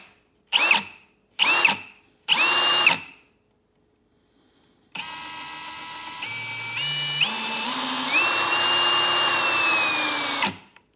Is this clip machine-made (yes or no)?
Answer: no